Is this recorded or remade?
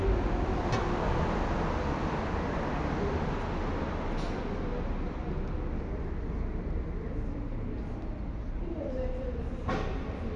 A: recorded